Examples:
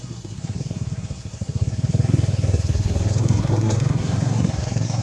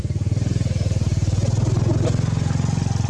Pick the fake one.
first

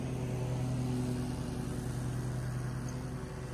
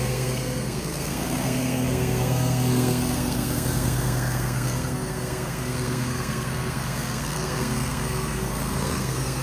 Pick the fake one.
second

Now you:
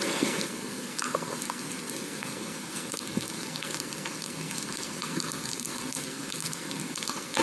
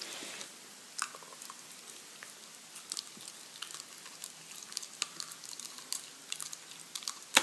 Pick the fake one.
first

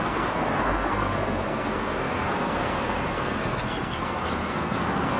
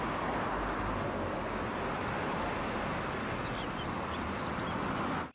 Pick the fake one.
first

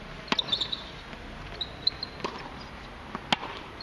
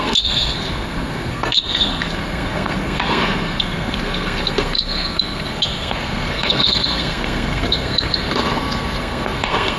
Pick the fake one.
second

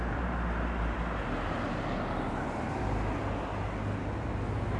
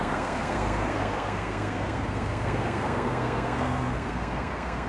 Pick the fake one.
second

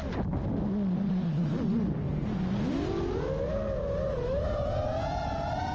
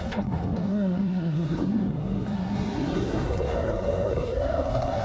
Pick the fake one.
second